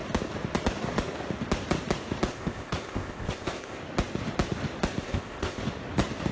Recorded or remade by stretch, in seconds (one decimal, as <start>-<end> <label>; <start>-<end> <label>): 0.0-2.3 recorded; 2.3-3.8 remade; 3.8-5.0 recorded; 5.0-5.6 remade; 5.6-6.3 recorded